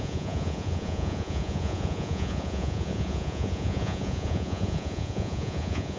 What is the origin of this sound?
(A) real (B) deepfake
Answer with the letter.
B